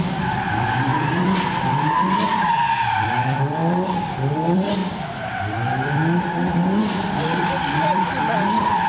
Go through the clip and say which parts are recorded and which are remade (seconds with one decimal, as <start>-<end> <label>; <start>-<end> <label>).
0.0-8.9 remade